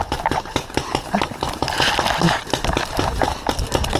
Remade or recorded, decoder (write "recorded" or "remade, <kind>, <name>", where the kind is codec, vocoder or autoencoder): recorded